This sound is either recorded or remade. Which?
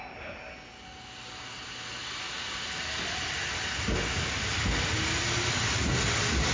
recorded